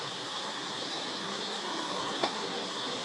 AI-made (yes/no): yes